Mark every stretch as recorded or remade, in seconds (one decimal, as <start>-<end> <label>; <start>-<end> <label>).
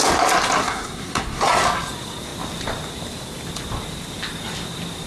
0.0-0.6 recorded; 0.6-1.4 remade; 1.4-5.1 recorded